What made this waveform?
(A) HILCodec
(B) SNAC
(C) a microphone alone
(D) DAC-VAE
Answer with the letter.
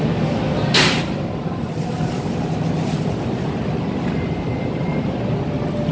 C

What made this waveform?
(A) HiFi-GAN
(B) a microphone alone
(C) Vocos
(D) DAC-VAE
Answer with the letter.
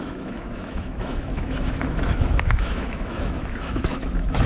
D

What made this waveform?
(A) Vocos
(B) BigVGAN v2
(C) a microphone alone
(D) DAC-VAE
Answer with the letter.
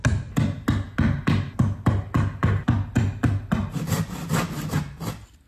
C